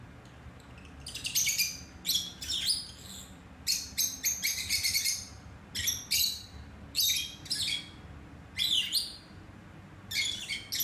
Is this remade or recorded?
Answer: recorded